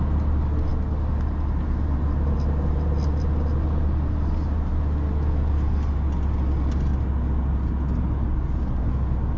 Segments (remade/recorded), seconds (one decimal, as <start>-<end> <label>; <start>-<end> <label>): 0.0-9.4 recorded